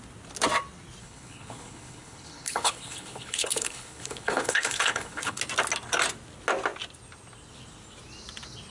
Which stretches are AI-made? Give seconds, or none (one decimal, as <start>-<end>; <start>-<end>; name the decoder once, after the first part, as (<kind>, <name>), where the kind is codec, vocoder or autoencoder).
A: 1.0-5.4 (codec, HILCodec)

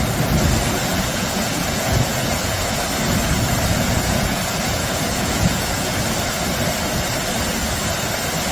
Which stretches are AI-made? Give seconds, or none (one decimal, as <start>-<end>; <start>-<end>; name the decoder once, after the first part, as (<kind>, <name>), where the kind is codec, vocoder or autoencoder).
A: 0.9-2.8 (vocoder, Vocos); 3.7-6.0

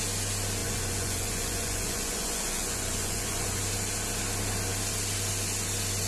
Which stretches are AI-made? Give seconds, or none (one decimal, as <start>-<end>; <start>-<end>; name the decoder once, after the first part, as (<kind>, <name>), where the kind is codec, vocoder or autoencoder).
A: 0.6-3.6 (vocoder, Vocos)

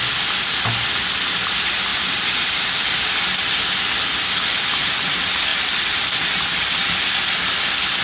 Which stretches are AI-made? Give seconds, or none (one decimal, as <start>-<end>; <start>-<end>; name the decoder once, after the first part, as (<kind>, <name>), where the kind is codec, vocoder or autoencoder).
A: 1.9-3.6 (vocoder, BigVGAN v2); 5.5-6.9